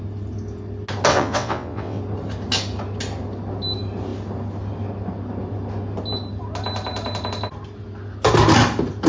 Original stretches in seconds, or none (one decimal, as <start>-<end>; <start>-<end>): 0.0-1.1; 2.0-9.1